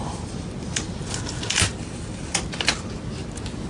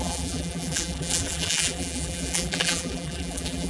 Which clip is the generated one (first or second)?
second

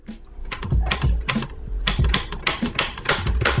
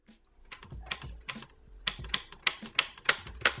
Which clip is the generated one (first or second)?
first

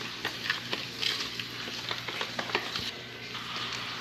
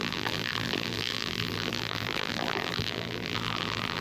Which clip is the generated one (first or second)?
second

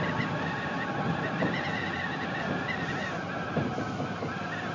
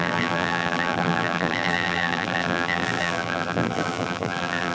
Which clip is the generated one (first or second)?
second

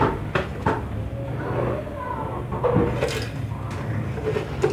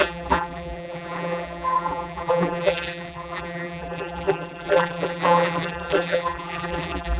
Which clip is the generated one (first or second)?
second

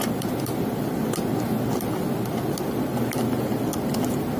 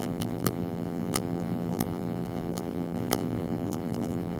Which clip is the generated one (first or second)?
second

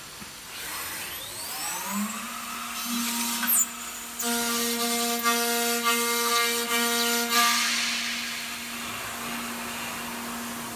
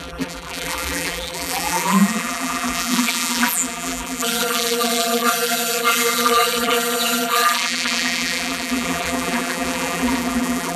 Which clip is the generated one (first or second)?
second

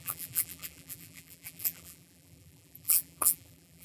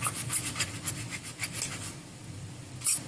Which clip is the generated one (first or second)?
first